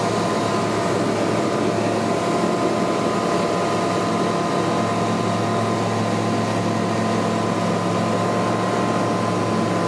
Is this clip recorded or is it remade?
recorded